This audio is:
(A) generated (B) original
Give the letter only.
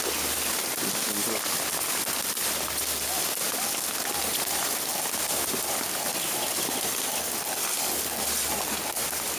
B